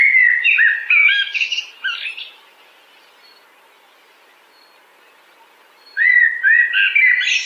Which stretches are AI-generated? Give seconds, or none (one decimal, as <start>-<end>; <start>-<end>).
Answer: 1.0-1.6